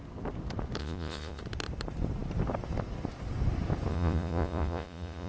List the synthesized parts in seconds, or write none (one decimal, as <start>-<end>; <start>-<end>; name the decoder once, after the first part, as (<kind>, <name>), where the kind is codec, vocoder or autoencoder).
0.8-1.4 (vocoder, Vocos); 3.9-5.3